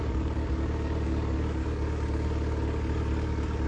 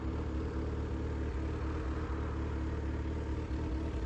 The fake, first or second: first